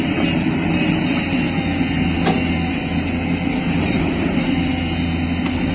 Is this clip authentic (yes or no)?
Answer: yes